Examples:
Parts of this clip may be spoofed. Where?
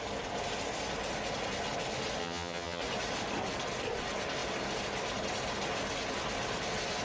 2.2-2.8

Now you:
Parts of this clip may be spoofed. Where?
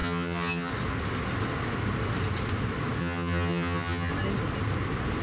0.0-0.7; 3.0-4.1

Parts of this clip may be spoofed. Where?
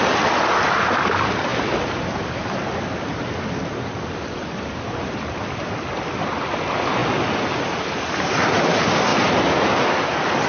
none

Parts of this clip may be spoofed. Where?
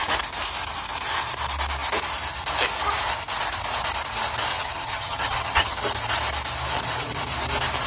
4.5-5.8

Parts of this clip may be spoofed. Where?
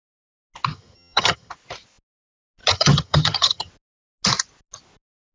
0.7-1.5; 2.6-3.7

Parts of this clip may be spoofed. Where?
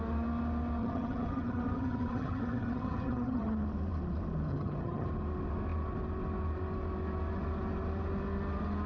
0.8-3.5; 4.5-5.1